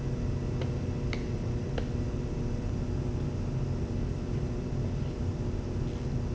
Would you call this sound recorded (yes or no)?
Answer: yes